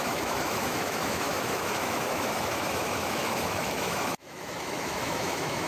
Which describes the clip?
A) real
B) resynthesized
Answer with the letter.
B